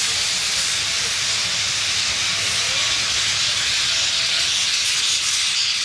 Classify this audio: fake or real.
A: real